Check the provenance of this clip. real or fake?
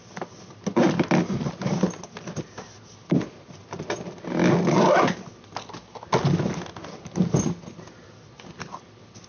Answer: real